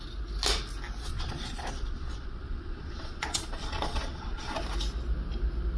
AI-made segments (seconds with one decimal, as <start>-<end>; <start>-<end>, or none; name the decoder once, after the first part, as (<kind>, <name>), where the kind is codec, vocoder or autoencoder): 1.1-4.6 (vocoder, Vocos)